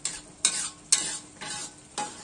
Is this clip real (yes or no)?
yes